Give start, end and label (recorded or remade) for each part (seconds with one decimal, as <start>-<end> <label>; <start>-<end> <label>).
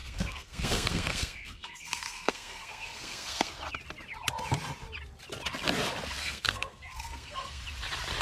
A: 0.0-3.5 remade; 3.5-6.2 recorded; 6.2-7.6 remade; 7.6-8.2 recorded